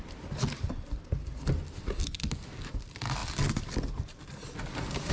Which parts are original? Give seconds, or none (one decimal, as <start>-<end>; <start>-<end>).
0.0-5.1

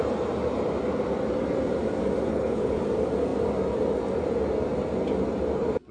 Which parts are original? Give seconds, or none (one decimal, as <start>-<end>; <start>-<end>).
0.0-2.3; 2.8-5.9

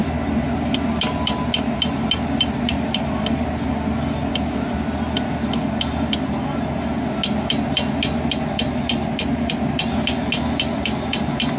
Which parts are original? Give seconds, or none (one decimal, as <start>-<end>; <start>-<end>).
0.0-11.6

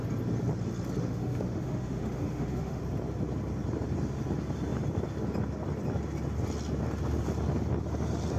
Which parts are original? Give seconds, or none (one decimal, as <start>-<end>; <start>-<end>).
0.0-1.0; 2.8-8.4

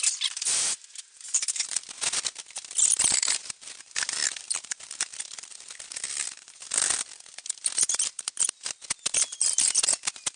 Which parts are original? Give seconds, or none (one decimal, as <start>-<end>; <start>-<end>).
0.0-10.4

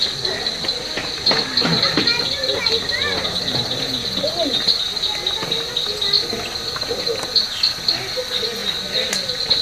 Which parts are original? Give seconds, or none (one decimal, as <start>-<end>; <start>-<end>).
0.0-9.6

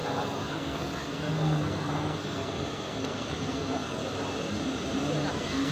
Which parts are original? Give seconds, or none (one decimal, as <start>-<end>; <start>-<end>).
4.0-5.3

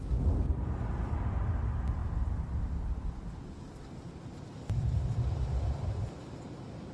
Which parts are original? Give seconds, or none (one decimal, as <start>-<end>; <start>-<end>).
0.0-2.0; 6.0-6.9